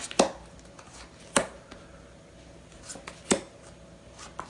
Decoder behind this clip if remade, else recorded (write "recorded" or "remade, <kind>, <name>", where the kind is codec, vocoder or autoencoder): recorded